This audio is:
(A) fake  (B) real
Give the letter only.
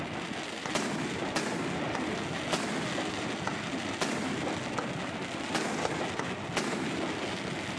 B